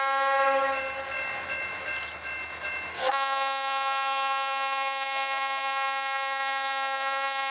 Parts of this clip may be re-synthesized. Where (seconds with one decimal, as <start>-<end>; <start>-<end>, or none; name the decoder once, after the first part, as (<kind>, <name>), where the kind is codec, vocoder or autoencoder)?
2.9-7.5 (codec, SNAC)